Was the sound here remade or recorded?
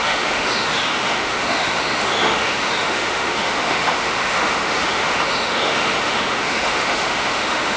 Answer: remade